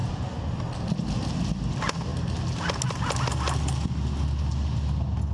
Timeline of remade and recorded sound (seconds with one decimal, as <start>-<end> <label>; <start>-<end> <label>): 0.0-5.3 recorded